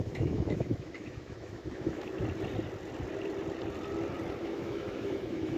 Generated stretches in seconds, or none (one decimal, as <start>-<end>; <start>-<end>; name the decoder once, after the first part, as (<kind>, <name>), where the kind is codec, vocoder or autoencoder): 0.0-2.2 (autoencoder, DAC-VAE); 4.4-5.6

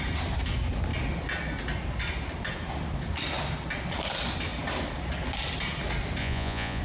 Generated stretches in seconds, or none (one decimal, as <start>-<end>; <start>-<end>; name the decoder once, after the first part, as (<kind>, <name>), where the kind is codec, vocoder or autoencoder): 6.2-6.8 (vocoder, Vocos)

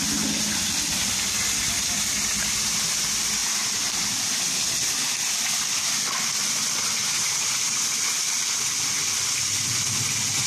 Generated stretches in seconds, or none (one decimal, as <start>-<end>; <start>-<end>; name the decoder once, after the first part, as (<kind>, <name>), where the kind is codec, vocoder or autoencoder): 3.4-4.1 (vocoder, BigVGAN v2); 7.0-7.7

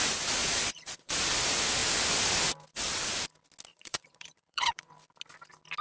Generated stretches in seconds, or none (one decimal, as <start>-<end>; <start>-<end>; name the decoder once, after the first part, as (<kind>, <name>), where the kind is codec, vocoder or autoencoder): 0.4-1.2 (vocoder, Vocos); 3.7-4.9

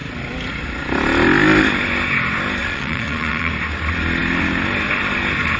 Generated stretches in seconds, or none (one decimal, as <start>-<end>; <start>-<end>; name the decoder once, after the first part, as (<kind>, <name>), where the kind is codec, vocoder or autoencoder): 2.6-3.5 (vocoder, Vocos)

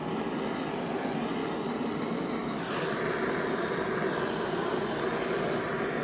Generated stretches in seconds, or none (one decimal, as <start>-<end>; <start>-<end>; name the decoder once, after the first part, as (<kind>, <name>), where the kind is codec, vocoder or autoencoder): none

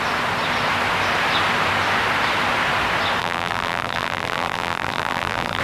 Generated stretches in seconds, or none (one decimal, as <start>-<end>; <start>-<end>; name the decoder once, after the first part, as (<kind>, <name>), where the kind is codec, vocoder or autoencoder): 3.2-5.6 (vocoder, BigVGAN v2)